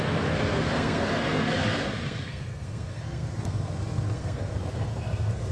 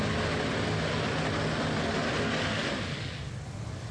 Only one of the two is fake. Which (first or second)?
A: first